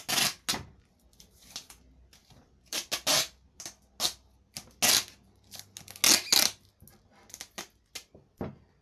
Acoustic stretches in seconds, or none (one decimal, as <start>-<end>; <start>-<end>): 0.0-2.2; 2.9-8.8